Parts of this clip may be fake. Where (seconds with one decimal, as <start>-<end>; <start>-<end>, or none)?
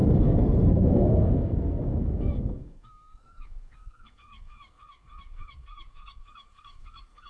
0.0-7.3